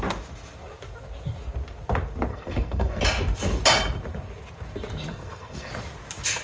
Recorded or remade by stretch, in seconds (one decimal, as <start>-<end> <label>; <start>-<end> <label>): 0.0-2.3 recorded; 2.3-3.0 remade; 3.0-5.1 recorded; 5.1-5.7 remade; 5.7-6.4 recorded